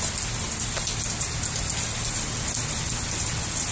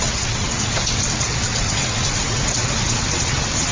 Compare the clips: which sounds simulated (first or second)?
second